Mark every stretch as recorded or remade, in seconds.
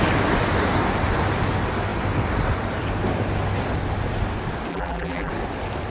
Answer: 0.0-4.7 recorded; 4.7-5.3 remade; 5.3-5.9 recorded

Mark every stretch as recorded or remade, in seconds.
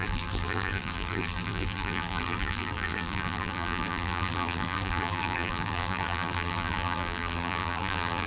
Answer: 0.0-8.3 remade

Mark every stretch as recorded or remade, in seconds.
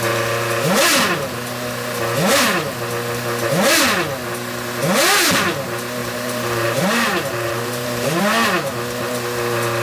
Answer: 0.0-6.0 recorded; 6.0-8.2 remade; 8.2-9.8 recorded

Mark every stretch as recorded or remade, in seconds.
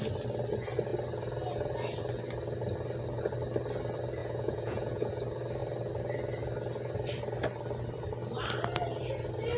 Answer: 0.0-4.2 recorded; 4.2-5.1 remade; 5.1-9.6 recorded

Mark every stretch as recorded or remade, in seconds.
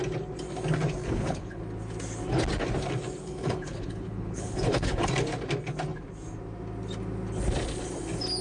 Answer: 0.0-1.0 recorded; 1.0-1.6 remade; 1.6-3.2 recorded; 3.2-5.1 remade; 5.1-8.4 recorded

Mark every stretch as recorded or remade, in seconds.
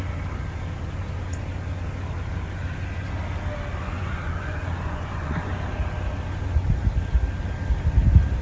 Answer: 0.0-3.8 recorded; 3.8-5.5 remade; 5.5-8.4 recorded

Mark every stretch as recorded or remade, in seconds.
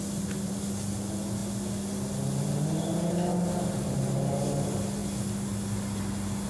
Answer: 0.0-6.5 recorded